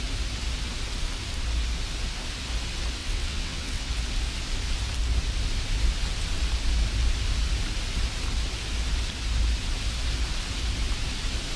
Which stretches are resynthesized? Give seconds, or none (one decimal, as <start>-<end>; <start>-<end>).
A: 3.0-3.9